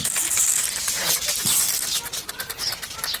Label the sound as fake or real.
fake